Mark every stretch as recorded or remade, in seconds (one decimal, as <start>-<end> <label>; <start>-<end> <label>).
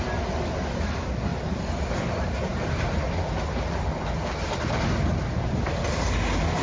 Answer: 0.0-6.6 recorded